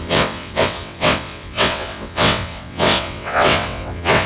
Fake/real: fake